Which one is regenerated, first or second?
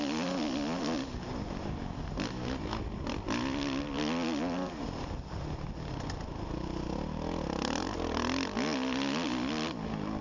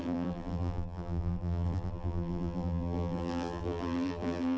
second